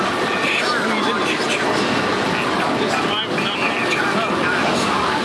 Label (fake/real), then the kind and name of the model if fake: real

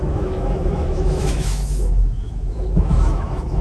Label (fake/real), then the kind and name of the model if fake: fake, autoencoder, DAC-VAE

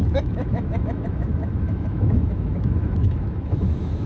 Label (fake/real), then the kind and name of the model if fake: fake, autoencoder, DAC-VAE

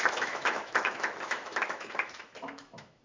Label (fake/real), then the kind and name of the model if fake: fake, autoencoder, DAC-VAE